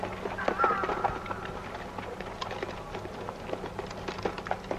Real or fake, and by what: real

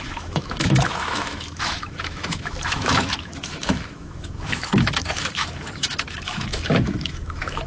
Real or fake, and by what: fake, autoencoder, DAC-VAE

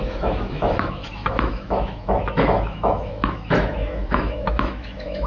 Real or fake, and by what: fake, autoencoder, DAC-VAE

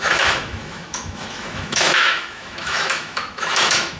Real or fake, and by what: fake, autoencoder, DAC-VAE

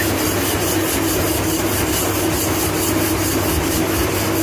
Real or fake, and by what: real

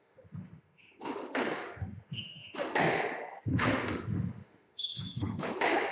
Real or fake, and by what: fake, autoencoder, DAC-VAE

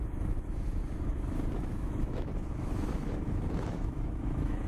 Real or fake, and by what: fake, autoencoder, DAC-VAE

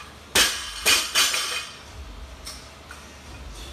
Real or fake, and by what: real